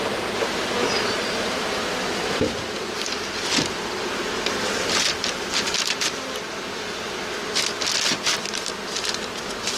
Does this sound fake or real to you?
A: real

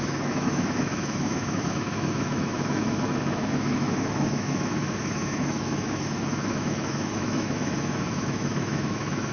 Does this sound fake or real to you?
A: fake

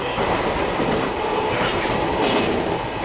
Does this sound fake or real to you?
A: real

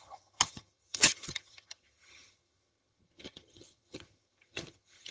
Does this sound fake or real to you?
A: fake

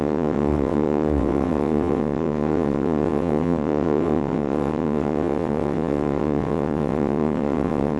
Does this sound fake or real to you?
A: fake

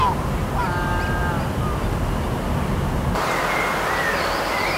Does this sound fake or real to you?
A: real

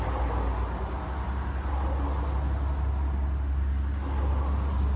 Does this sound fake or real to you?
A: real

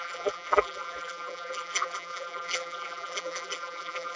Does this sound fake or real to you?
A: fake